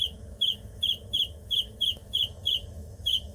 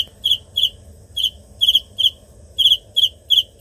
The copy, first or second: first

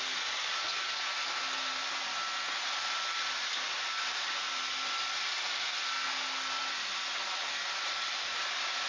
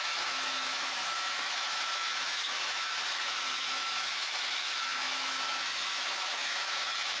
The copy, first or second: second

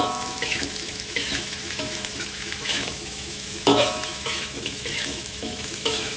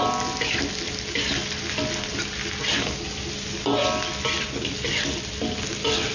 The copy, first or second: first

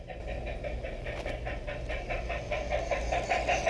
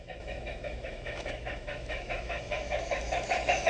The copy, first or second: second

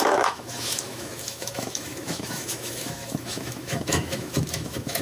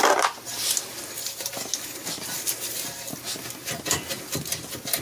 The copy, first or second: first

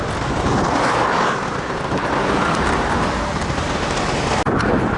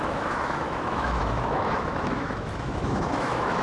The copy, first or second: second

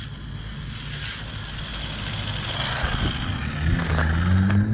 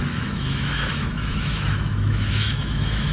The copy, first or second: second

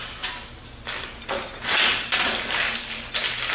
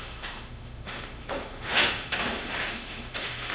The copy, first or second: second